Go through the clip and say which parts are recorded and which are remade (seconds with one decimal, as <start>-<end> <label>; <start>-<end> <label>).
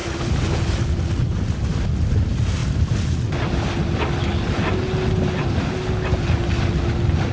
0.0-0.7 remade; 0.7-7.3 recorded